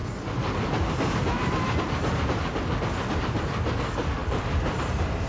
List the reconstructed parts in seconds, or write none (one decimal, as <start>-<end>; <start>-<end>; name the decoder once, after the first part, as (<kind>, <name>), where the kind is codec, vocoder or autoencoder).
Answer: 4.2-5.3 (vocoder, BigVGAN v2)